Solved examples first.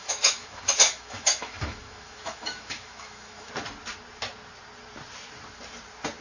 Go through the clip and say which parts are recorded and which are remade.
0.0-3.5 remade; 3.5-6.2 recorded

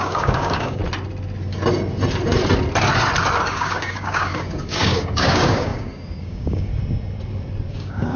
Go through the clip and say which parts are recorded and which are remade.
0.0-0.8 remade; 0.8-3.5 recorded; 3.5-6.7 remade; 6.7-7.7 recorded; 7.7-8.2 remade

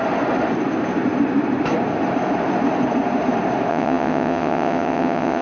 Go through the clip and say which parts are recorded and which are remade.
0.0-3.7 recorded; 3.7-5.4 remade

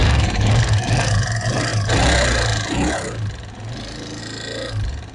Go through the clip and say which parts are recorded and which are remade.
0.0-1.1 remade; 1.1-5.1 recorded